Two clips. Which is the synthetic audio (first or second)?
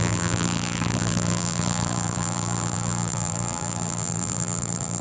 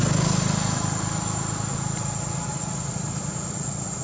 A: first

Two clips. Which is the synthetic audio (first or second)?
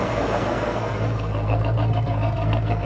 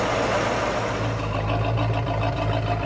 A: first